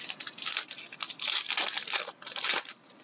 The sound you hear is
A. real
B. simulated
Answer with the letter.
A